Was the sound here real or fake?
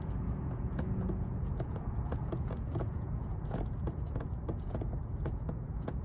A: fake